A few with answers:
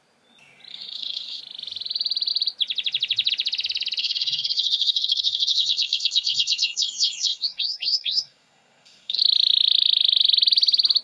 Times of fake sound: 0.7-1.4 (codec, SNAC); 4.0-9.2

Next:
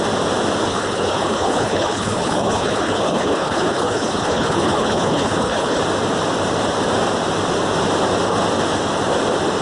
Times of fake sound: 0.7-5.8 (codec, HILCodec)

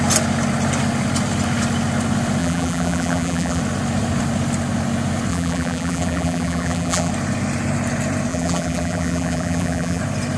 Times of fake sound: 2.4-3.6 (vocoder, BigVGAN v2); 5.3-7.1; 8.3-10.0

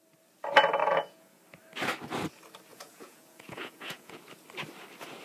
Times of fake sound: 0.8-1.4 (vocoder, Vocos); 2.7-4.2

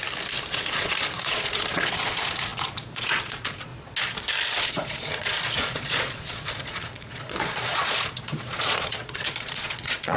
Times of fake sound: 0.5-3.7 (vocoder, Vocos); 4.7-10.2

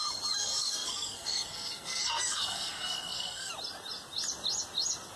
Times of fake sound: 0.4-3.5 (codec, SNAC)

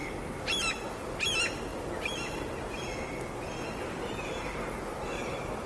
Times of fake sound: none

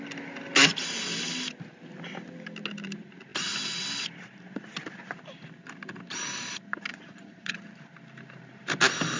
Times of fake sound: 6.9-7.5 (vocoder, Vocos)